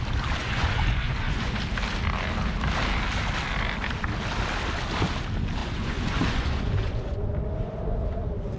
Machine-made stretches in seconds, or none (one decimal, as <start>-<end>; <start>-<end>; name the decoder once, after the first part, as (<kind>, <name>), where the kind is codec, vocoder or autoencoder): 0.4-1.6 (vocoder, Vocos); 5.6-7.3